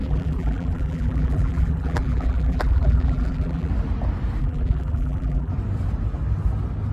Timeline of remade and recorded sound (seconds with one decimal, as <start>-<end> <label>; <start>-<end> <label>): 0.0-3.7 remade; 3.7-4.4 recorded; 4.4-5.5 remade; 5.5-6.9 recorded